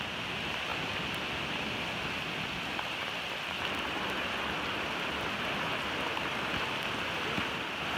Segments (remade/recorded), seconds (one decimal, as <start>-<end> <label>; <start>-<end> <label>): 0.0-8.0 recorded